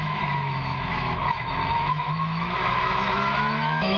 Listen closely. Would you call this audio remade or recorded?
remade